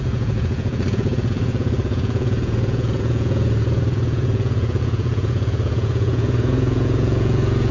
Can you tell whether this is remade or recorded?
remade